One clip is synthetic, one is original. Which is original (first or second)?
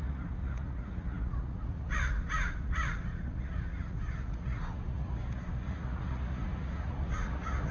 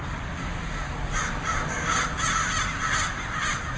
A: second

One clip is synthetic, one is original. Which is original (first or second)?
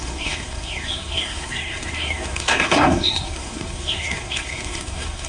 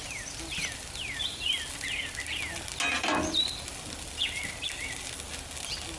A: second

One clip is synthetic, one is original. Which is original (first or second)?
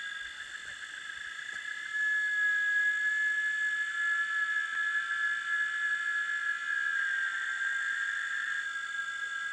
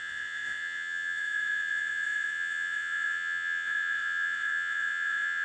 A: first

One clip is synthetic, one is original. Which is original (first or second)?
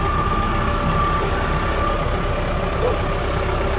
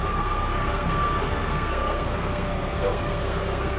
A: first